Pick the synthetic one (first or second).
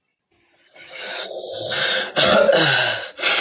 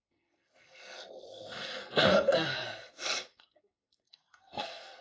second